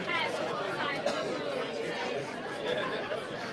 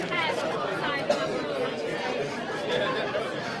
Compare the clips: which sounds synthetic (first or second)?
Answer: first